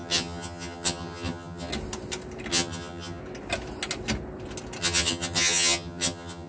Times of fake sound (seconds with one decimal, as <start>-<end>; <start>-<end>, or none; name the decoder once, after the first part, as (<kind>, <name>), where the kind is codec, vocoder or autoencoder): 0.0-1.7 (vocoder, HiFi-GAN); 2.5-3.2; 4.8-6.5